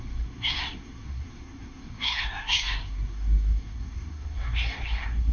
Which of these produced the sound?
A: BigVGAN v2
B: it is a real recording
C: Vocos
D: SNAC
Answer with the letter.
D